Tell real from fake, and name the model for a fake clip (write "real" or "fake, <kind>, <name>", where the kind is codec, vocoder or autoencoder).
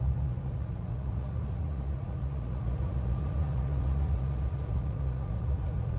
fake, vocoder, Vocos